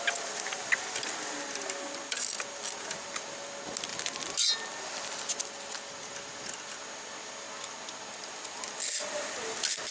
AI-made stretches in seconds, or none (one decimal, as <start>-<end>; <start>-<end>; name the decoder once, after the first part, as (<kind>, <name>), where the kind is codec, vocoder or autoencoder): none

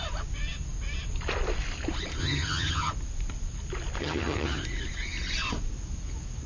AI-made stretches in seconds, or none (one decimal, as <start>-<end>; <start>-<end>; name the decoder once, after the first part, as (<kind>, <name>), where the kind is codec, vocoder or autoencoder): 2.2-2.9 (vocoder, HiFi-GAN); 4.0-4.6

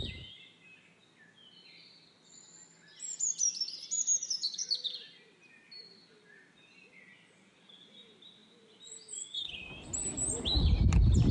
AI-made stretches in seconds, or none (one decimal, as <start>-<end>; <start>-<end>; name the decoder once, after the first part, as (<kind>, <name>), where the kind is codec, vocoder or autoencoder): none

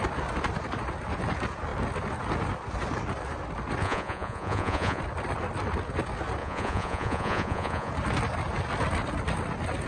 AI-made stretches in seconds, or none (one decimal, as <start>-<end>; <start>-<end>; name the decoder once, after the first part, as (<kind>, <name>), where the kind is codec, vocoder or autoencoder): 3.8-5.0 (vocoder, Vocos); 6.4-7.9